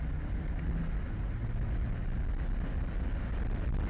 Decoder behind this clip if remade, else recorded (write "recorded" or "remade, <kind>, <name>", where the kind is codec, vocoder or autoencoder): recorded